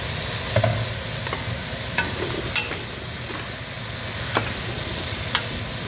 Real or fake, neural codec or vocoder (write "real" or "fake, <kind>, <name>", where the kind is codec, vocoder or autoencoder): real